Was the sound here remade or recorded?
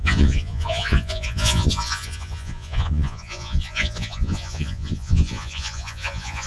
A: remade